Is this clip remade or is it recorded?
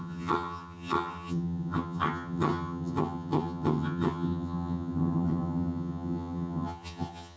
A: remade